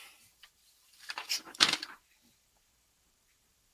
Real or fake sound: fake